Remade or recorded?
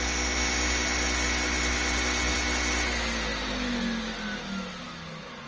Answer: recorded